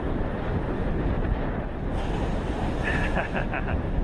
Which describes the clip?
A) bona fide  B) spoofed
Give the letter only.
A